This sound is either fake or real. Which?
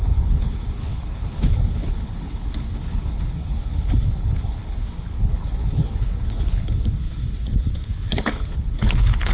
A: fake